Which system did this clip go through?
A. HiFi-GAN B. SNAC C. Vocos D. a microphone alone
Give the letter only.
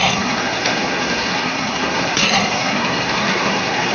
B